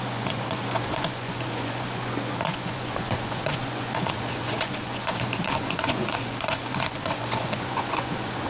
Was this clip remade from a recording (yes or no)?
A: yes